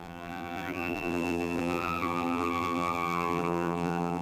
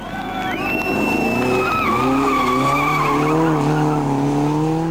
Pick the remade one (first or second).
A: first